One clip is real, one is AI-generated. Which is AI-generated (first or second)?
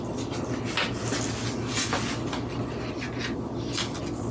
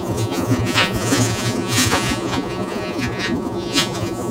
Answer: second